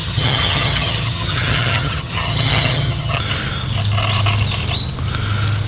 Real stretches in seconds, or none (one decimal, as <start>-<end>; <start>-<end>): 3.2-5.7